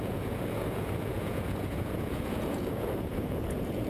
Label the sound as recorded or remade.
remade